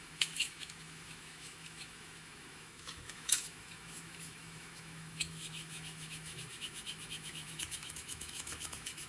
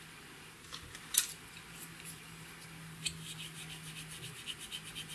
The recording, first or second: second